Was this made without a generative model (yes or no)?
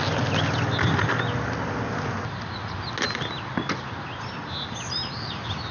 yes